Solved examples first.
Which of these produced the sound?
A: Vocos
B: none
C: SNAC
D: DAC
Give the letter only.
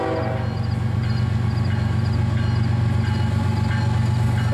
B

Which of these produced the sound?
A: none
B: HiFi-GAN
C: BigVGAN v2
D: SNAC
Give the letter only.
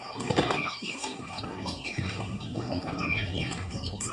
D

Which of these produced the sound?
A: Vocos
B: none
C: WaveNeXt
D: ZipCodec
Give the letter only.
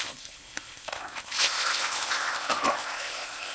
D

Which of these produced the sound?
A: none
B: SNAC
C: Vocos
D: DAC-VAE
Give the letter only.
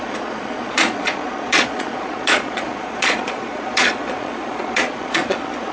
C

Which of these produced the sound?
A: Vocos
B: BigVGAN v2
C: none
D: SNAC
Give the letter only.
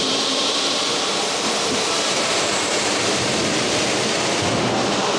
B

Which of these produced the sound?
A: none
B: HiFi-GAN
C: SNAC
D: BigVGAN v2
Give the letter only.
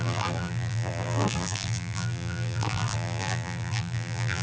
D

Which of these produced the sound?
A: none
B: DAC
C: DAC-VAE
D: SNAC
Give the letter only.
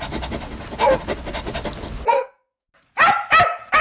A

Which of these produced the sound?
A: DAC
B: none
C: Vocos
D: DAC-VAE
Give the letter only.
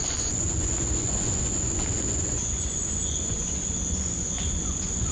C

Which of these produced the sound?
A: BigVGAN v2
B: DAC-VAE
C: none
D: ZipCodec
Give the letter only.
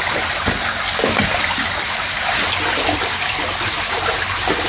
C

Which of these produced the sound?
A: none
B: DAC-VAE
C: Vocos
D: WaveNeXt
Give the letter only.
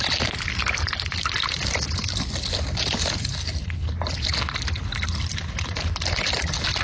A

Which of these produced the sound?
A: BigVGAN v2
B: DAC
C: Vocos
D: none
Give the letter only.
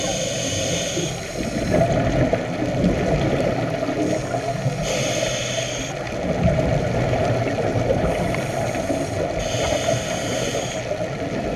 D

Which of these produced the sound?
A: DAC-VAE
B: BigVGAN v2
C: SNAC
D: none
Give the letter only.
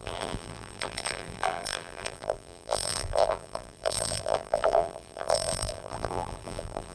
B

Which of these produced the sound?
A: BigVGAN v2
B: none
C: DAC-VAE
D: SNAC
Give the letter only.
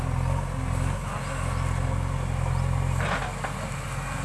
B